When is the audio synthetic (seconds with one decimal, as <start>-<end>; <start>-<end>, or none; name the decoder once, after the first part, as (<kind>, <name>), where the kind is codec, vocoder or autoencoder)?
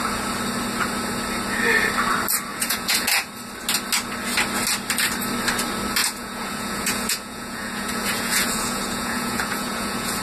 2.5-3.3 (vocoder, Vocos); 6.0-10.2